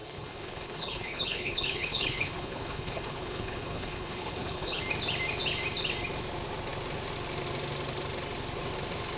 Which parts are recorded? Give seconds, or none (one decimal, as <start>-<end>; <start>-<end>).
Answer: 4.8-9.2